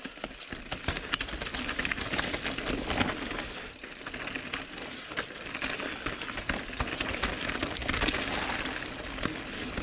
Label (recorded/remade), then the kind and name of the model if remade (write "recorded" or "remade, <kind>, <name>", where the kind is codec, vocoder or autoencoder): recorded